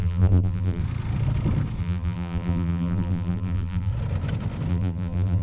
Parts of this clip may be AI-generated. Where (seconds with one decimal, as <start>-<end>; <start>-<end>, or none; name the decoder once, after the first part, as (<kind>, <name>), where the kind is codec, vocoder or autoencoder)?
0.0-0.8 (vocoder, BigVGAN v2); 1.8-3.9; 4.7-5.4